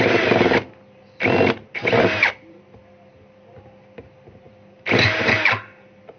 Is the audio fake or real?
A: real